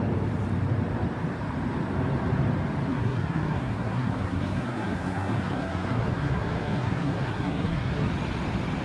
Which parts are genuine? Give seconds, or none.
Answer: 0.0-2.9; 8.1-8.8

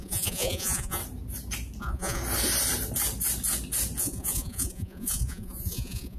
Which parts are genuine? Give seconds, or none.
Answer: 1.0-1.8; 2.2-4.0